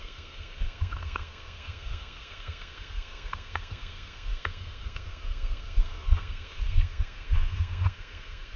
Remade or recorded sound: remade